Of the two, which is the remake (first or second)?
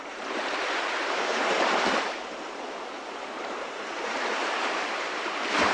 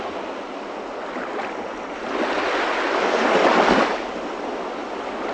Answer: first